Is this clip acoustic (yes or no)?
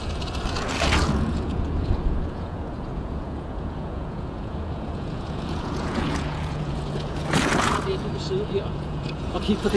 no